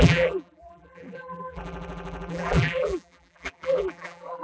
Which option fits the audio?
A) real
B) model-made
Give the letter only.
B